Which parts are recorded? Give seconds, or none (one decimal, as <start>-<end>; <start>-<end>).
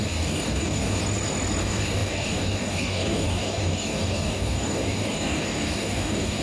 1.0-1.6